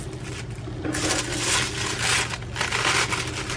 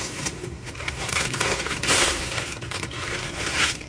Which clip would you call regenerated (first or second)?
second